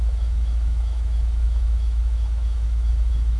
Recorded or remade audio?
remade